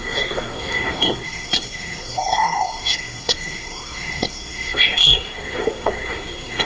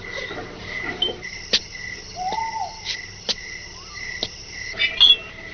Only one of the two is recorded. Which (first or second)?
second